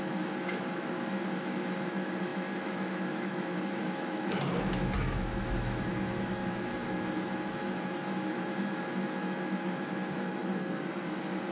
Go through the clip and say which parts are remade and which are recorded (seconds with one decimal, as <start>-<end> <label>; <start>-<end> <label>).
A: 0.0-10.4 remade; 10.4-11.1 recorded; 11.1-11.5 remade